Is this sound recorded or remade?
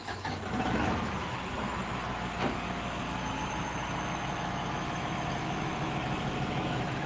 remade